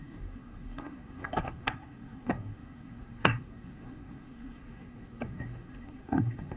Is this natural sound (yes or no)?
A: no